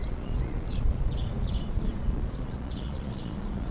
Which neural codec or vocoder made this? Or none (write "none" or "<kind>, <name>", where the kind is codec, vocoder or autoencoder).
vocoder, Vocos